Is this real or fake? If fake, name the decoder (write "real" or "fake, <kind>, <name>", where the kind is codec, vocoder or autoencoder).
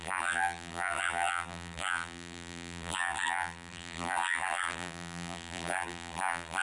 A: fake, vocoder, BigVGAN v2